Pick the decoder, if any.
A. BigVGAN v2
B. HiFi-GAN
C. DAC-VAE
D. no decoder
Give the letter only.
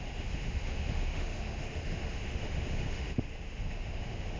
C